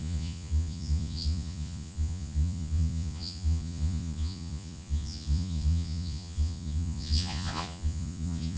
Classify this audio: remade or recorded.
remade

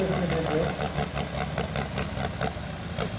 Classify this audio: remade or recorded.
recorded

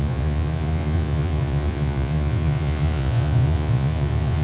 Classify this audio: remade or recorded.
remade